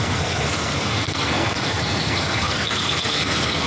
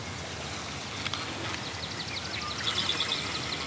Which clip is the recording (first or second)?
second